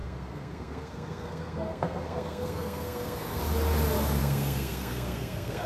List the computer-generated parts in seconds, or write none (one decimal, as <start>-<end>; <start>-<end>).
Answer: 0.0-3.4; 4.2-5.7